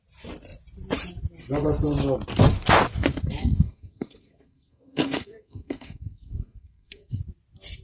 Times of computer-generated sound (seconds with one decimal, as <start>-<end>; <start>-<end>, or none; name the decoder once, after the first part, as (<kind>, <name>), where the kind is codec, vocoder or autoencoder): 3.4-7.2 (codec, SNAC)